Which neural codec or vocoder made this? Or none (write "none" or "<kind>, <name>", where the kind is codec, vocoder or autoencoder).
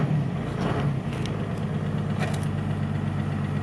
none